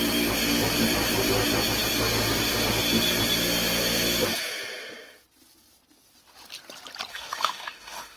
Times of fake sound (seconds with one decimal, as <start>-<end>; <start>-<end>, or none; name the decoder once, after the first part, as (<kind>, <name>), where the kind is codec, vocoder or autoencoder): 7.1-8.2 (autoencoder, DAC-VAE)